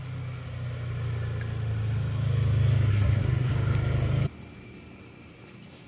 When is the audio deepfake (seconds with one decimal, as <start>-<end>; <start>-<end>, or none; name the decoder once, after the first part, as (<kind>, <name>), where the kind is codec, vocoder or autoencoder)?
2.9-3.5 (codec, SNAC)